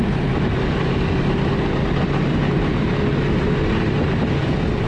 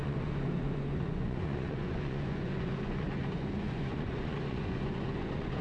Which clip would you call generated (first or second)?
second